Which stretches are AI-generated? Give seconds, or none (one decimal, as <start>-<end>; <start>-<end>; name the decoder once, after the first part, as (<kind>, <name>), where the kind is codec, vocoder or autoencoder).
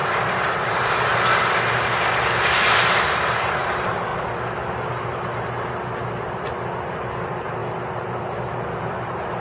0.0-4.1 (vocoder, BigVGAN v2); 6.9-7.6; 8.8-9.4